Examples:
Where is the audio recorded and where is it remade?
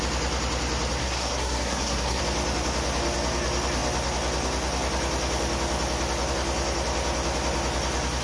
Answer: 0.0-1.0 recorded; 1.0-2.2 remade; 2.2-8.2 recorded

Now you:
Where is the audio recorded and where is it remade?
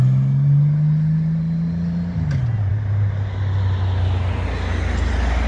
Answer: 0.0-5.5 recorded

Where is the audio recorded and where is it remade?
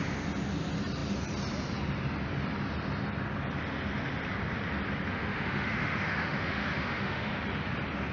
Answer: 0.0-5.1 recorded; 5.1-7.3 remade; 7.3-8.1 recorded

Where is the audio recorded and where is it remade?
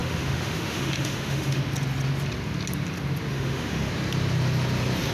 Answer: 0.0-1.6 remade; 1.6-3.3 recorded; 3.3-3.9 remade; 3.9-5.1 recorded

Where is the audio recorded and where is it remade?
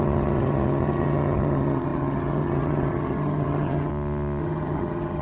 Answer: 0.0-3.9 remade; 3.9-4.4 recorded; 4.4-5.2 remade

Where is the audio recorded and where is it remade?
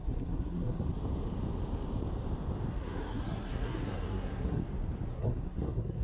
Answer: 0.0-0.9 remade; 0.9-2.7 recorded; 2.7-4.6 remade; 4.6-5.1 recorded; 5.1-6.0 remade